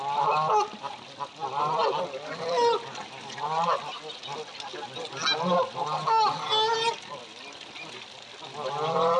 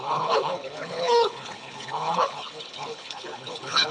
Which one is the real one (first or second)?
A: first